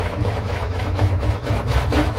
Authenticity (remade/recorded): remade